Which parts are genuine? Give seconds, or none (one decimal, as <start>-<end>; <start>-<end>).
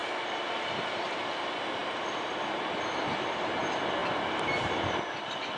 1.3-5.6